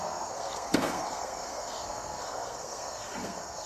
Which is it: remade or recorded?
remade